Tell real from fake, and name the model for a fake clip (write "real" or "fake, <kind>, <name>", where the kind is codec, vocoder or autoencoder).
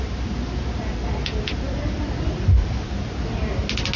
real